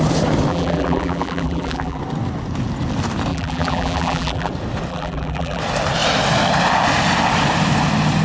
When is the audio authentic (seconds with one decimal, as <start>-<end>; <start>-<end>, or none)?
0.0-0.5; 2.0-3.3; 4.5-4.9; 5.6-8.2